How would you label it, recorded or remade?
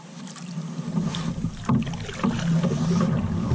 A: recorded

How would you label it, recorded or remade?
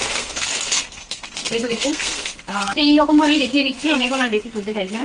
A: remade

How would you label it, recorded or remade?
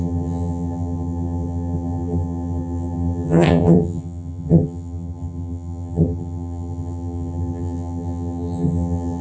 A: remade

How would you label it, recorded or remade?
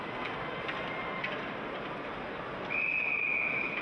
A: recorded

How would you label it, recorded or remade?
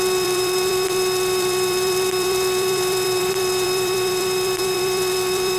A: remade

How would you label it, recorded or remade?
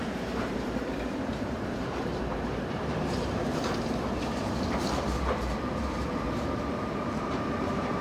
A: remade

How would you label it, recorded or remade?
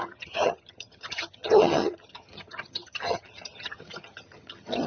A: remade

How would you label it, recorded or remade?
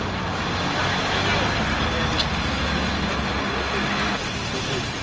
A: recorded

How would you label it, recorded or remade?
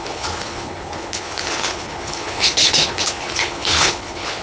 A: remade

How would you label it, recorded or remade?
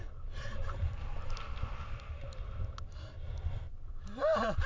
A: recorded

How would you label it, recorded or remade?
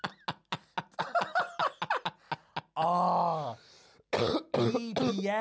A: recorded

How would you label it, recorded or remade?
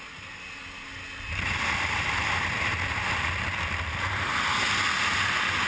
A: recorded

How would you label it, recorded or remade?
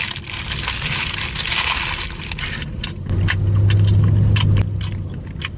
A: recorded